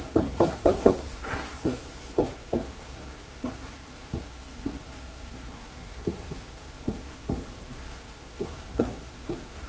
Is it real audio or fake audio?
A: fake